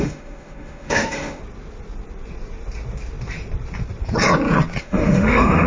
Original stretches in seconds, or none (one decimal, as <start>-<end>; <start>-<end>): 1.4-4.8